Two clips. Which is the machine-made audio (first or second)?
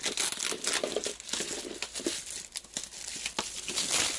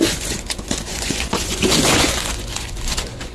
second